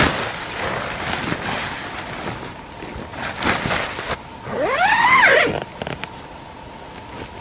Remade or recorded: recorded